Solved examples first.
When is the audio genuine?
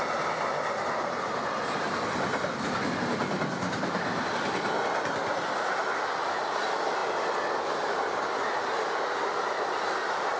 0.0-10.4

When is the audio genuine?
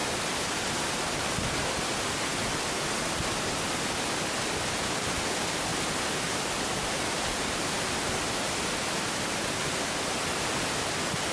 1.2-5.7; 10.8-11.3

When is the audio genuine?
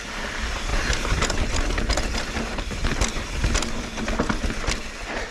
0.0-5.3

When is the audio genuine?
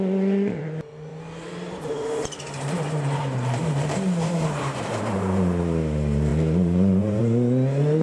0.0-1.1; 5.6-6.3; 7.2-8.0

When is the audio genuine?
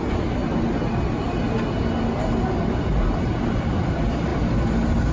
0.4-3.5; 4.3-5.1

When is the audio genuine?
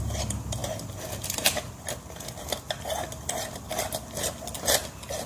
0.0-5.3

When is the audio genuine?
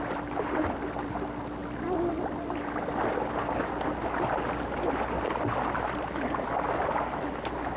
0.0-1.6; 2.1-7.8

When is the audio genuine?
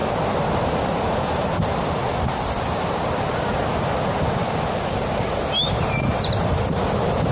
0.0-1.0; 2.0-6.4